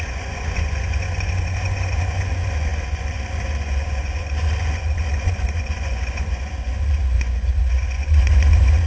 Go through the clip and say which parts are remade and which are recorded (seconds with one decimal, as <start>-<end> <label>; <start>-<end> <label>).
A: 0.0-8.9 remade